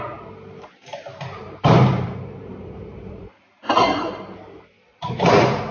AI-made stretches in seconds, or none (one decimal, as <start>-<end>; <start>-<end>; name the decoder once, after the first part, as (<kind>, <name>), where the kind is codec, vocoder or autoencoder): 1.4-4.1 (vocoder, BigVGAN v2)